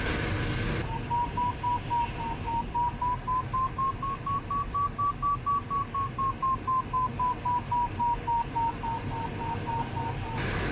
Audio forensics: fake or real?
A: real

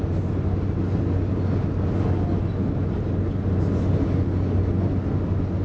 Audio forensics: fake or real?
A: real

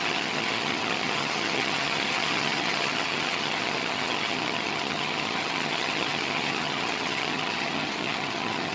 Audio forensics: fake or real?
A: fake